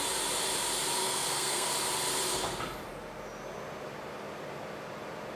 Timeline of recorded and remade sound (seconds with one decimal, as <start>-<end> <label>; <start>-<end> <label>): 0.0-1.0 recorded; 1.0-1.7 remade; 1.7-5.4 recorded